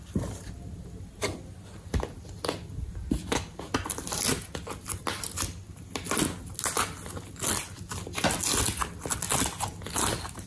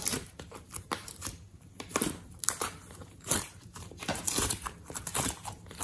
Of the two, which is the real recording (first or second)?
first